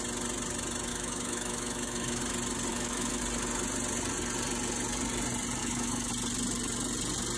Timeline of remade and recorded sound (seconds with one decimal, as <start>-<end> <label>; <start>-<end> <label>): 0.0-0.9 recorded; 0.9-2.2 remade; 2.2-2.7 recorded; 2.7-3.2 remade; 3.2-5.6 recorded; 5.6-6.1 remade; 6.1-7.4 recorded